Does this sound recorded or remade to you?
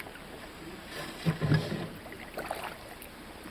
recorded